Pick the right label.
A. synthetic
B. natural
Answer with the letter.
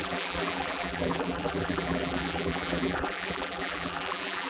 A